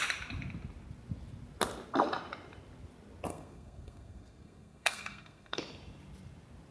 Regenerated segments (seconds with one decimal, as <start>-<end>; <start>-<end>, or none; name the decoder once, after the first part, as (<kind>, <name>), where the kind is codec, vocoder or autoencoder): 3.3-5.6 (codec, SNAC)